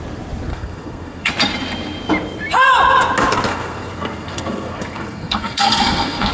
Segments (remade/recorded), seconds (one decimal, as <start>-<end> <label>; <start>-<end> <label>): 0.0-0.5 recorded; 0.5-1.3 remade; 1.3-3.5 recorded; 3.5-6.3 remade